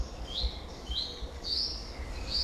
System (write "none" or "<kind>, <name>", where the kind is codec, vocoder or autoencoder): codec, DAC